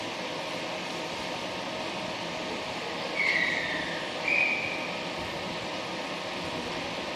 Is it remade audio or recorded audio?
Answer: recorded